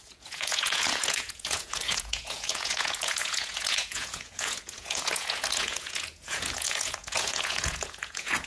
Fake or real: fake